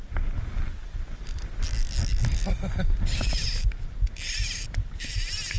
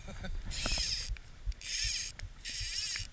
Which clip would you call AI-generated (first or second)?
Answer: second